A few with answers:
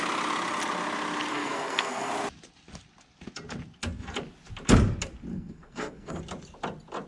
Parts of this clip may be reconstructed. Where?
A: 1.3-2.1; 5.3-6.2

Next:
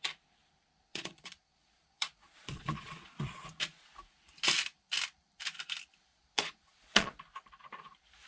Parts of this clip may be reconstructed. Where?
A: 0.9-3.4; 6.1-7.2

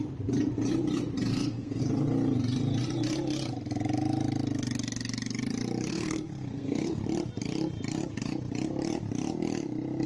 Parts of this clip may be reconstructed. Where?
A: 1.3-1.8; 5.9-7.0